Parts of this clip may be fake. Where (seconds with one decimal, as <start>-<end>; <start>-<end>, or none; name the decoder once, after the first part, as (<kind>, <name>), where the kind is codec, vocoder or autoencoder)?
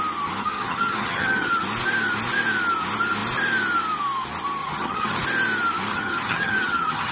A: 0.4-1.6 (vocoder, HiFi-GAN); 4.6-5.2; 5.9-7.1